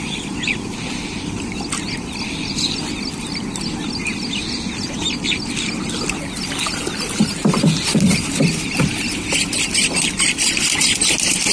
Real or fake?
real